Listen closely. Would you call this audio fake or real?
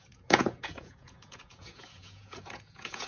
fake